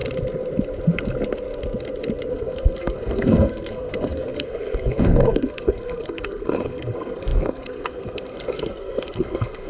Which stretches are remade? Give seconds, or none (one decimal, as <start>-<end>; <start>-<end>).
2.3-9.7